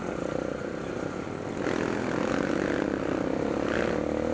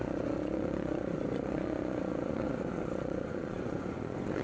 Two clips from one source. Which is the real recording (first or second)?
first